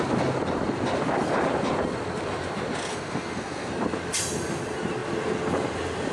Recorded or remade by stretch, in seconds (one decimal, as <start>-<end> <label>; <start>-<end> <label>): 0.0-2.9 recorded; 2.9-3.7 remade; 3.7-6.1 recorded